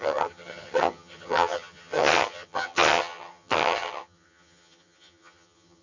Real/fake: fake